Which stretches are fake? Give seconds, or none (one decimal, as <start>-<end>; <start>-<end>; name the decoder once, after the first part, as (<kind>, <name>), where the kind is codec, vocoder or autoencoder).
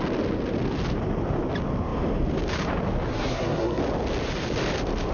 3.1-3.8 (codec, SNAC)